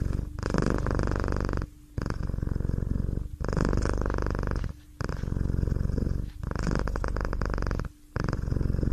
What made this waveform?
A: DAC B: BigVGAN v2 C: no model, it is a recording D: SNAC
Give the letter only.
C